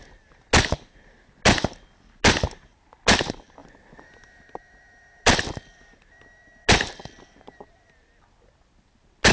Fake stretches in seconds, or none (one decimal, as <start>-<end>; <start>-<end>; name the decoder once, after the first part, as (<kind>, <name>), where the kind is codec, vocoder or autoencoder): none